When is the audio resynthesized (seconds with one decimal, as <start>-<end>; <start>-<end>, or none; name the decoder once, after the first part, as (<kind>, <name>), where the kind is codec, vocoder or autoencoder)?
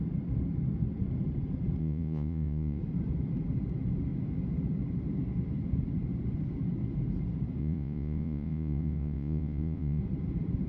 1.8-2.8 (vocoder, Vocos); 7.6-10.0